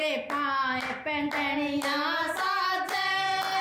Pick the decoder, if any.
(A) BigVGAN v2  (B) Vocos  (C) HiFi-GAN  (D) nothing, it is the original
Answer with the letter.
D